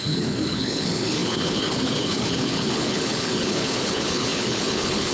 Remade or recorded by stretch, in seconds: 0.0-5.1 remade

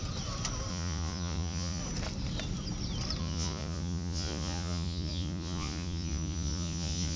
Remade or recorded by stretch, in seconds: 0.0-0.7 recorded; 0.7-1.8 remade; 1.8-3.2 recorded; 3.2-7.2 remade

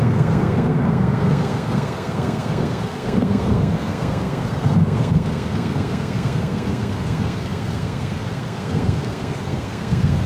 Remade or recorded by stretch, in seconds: 0.0-10.3 remade